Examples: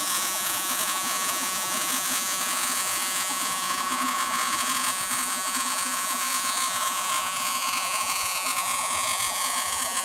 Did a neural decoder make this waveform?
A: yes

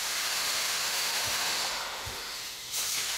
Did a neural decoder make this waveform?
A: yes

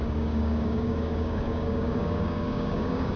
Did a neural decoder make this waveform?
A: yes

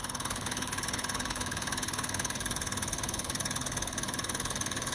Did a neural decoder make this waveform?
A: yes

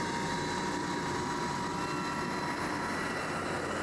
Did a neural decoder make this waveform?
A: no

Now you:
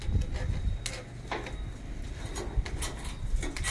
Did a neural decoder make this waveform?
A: no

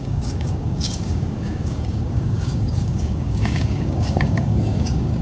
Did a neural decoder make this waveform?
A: yes